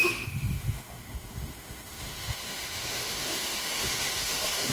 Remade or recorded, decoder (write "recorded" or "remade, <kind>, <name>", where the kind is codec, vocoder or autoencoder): remade, autoencoder, DAC-VAE